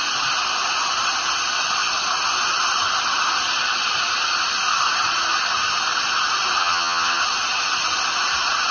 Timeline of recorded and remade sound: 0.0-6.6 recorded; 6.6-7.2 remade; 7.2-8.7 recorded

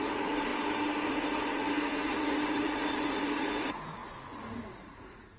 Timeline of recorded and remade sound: 0.0-0.5 remade; 0.5-1.1 recorded; 1.1-5.4 remade

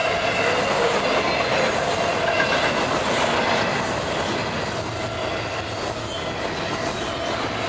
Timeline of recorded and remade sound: 0.0-7.7 recorded

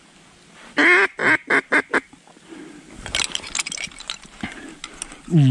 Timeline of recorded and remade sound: 0.0-1.2 recorded; 1.2-1.9 remade; 1.9-5.5 recorded